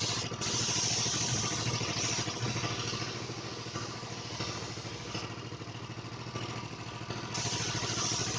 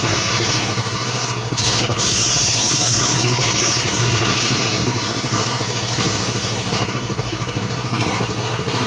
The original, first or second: first